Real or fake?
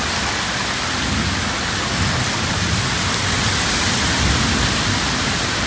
real